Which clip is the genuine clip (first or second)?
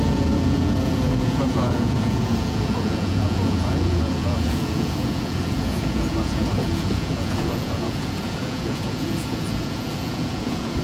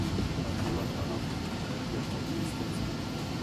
second